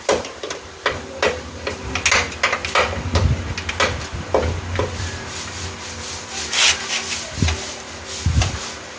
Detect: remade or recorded recorded